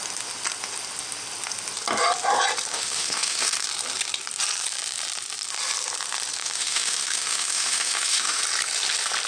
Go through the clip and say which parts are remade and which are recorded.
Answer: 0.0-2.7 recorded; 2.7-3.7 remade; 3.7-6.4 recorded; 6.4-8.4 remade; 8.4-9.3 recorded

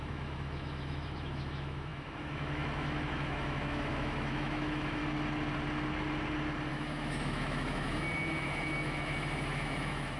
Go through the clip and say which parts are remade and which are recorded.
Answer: 0.0-5.0 remade; 5.0-6.7 recorded; 6.7-10.2 remade

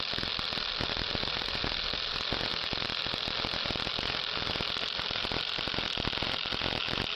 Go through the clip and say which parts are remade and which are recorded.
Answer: 0.0-7.2 recorded

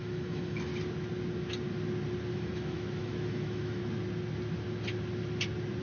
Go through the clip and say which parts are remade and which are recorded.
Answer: 0.0-0.7 remade; 0.7-2.3 recorded; 2.3-3.8 remade; 3.8-5.8 recorded

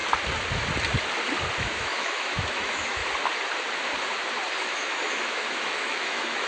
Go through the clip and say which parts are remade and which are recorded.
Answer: 0.0-1.6 recorded; 1.6-3.0 remade; 3.0-4.6 recorded; 4.6-6.5 remade

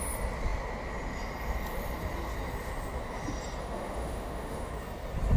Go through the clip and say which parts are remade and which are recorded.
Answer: 0.0-3.6 recorded; 3.6-4.7 remade; 4.7-5.4 recorded